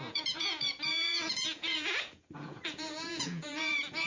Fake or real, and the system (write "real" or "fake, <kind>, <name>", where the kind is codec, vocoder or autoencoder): fake, vocoder, Vocos